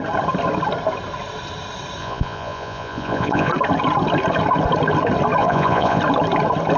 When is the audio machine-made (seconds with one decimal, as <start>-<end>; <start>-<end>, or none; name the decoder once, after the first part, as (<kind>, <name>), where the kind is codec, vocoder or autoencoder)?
2.0-3.5 (vocoder, Vocos); 5.4-6.0